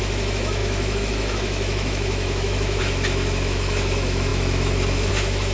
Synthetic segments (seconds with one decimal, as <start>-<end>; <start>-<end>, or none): 0.0-5.5